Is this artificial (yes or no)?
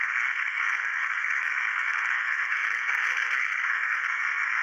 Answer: yes